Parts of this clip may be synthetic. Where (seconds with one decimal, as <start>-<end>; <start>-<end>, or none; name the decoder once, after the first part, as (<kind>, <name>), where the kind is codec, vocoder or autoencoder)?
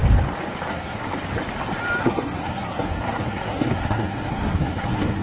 0.7-1.1 (codec, SNAC); 2.0-5.2